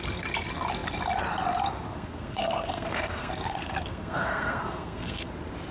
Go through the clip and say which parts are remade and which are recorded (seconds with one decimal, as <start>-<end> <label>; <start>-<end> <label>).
0.0-1.9 recorded; 1.9-5.3 remade; 5.3-5.7 recorded